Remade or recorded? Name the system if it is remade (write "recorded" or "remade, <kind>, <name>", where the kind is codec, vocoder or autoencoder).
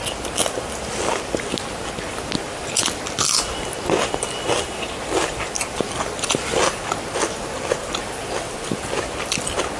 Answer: recorded